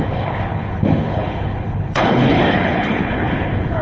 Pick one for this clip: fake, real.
fake